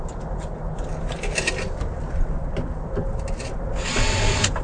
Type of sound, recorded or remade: recorded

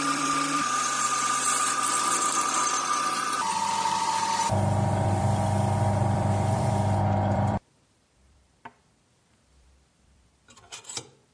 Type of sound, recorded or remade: remade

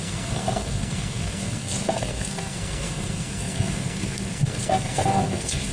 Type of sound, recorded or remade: remade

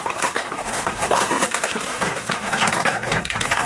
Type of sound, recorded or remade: remade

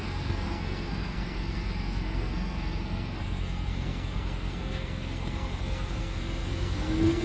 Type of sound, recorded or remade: remade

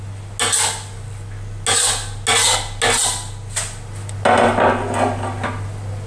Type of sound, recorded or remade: recorded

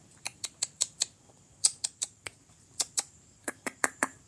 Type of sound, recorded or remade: remade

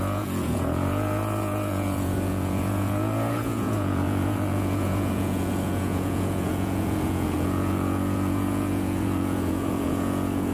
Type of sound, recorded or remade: remade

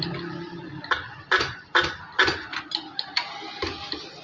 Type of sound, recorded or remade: recorded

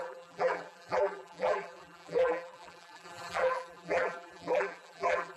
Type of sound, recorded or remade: remade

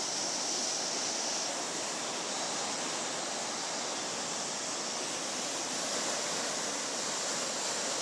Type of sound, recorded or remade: recorded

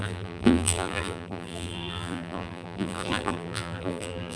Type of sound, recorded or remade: remade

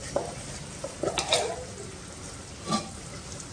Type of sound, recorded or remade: recorded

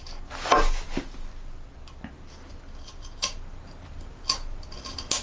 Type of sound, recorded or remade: recorded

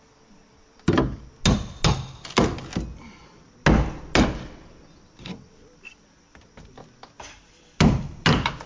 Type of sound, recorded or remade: recorded